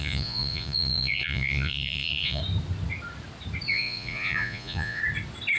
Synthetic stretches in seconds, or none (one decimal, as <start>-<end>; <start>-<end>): 0.0-2.4; 3.7-5.0